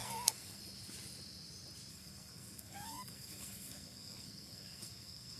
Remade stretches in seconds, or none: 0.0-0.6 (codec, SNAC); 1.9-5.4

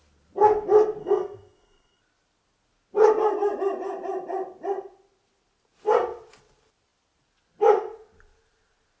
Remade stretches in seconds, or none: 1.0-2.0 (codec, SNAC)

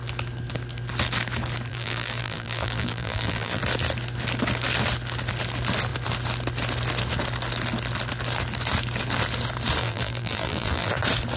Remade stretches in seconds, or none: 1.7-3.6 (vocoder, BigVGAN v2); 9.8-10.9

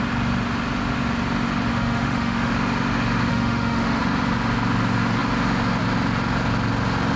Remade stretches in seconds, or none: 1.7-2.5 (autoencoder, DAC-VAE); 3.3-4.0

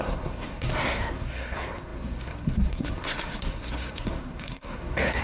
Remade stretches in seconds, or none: 0.0-5.2 (codec, SNAC)